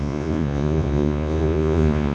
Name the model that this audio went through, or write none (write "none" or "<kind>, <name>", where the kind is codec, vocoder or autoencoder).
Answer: vocoder, Vocos